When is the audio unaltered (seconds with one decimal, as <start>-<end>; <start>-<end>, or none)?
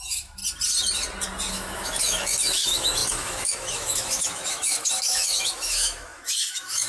0.4-1.5